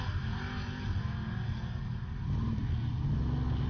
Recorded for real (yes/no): yes